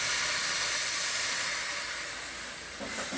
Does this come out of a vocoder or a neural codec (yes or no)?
no